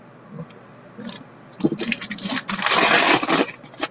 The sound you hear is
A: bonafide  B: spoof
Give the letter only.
A